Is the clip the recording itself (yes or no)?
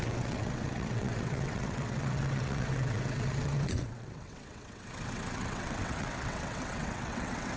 no